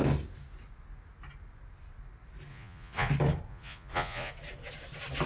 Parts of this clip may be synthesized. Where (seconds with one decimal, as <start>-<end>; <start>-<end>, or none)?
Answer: 2.5-3.1; 3.5-4.3